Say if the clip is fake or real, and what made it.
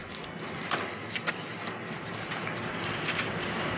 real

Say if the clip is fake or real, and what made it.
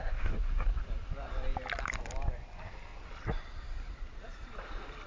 real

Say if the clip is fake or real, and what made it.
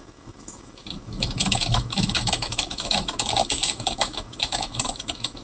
fake, autoencoder, DAC-VAE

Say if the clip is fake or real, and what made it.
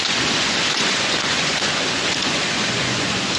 fake, vocoder, Vocos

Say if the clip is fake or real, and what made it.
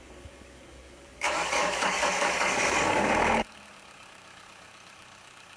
fake, codec, DAC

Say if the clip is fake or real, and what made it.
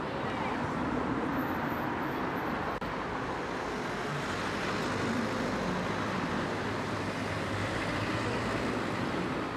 real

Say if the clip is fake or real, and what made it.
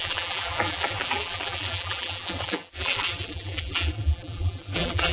fake, vocoder, BigVGAN v2